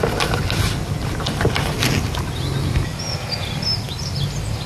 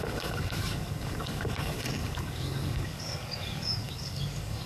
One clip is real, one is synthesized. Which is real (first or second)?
first